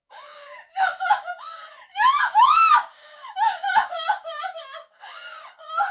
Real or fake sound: fake